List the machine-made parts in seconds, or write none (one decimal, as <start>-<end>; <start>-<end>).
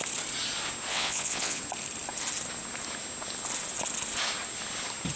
0.9-1.6